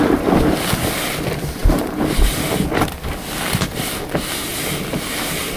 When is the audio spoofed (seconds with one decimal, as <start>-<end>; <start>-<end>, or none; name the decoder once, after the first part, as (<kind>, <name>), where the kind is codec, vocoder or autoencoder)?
none